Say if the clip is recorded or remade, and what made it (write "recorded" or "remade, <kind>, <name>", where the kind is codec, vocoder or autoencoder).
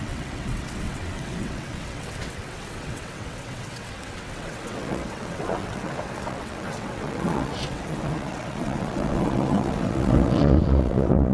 remade, vocoder, WaveNeXt